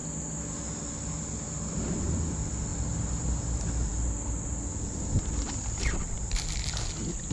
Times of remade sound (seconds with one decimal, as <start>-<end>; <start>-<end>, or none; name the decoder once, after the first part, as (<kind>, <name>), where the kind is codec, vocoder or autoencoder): none